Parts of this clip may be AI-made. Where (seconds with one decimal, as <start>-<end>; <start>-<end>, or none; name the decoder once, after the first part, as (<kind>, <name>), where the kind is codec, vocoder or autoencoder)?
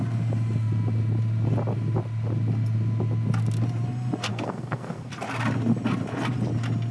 4.3-5.1 (codec, SNAC)